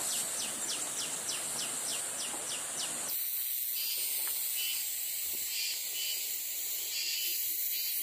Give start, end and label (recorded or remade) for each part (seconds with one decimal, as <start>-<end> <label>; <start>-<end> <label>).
0.0-8.0 recorded